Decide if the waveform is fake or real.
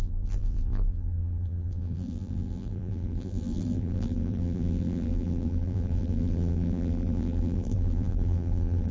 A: fake